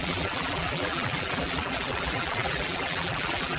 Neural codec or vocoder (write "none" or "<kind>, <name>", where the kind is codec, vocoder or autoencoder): vocoder, BigVGAN v2